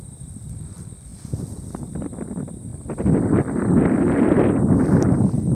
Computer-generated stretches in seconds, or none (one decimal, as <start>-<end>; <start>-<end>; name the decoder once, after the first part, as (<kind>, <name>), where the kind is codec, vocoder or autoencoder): none